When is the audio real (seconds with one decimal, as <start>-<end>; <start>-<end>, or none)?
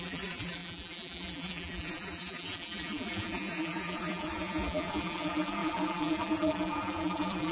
none